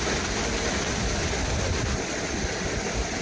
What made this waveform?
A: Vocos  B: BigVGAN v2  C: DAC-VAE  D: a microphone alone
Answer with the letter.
D